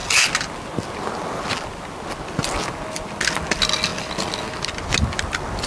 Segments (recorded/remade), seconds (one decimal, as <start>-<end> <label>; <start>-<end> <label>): 0.0-5.7 recorded